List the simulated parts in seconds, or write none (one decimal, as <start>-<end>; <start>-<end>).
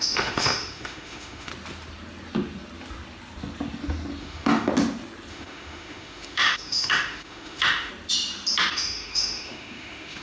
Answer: 0.0-1.5; 4.2-4.7; 5.3-7.9; 8.7-10.2